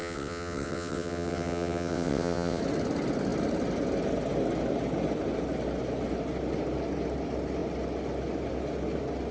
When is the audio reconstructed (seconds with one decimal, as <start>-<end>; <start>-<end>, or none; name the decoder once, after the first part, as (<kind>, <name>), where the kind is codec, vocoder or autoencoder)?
0.0-2.6 (vocoder, WaveNeXt)